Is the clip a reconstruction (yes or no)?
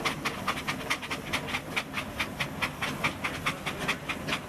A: no